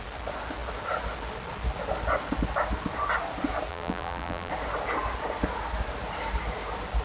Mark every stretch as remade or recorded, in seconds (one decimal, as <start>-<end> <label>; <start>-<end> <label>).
0.0-3.7 recorded; 3.7-4.5 remade; 4.5-7.0 recorded